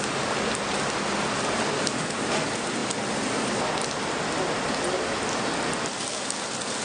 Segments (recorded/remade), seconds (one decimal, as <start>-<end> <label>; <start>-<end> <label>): 0.0-6.8 recorded